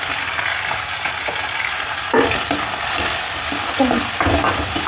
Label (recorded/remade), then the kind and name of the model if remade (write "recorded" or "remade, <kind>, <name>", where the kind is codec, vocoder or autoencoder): recorded